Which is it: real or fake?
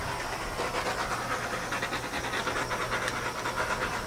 real